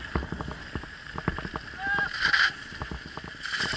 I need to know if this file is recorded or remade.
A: recorded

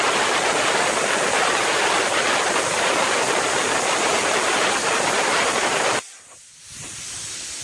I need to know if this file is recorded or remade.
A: recorded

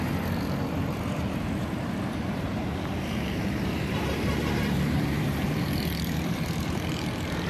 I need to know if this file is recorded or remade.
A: remade